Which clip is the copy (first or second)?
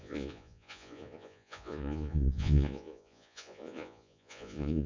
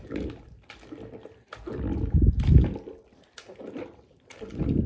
first